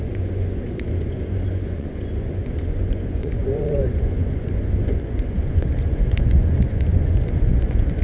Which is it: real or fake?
fake